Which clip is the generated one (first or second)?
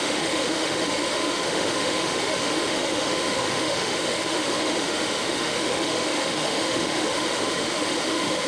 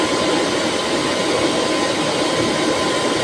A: first